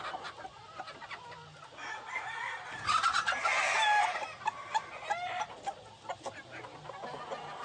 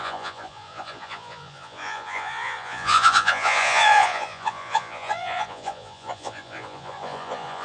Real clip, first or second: first